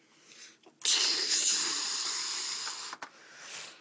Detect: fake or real real